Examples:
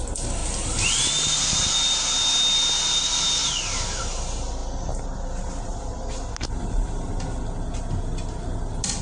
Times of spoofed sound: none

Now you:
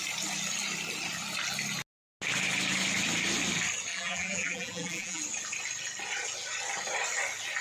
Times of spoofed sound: 3.9-5.2 (vocoder, BigVGAN v2)